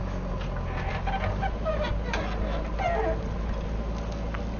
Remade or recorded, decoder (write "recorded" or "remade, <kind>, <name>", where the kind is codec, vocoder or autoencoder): recorded